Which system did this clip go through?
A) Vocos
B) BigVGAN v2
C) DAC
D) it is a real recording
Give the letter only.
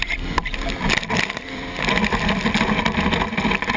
B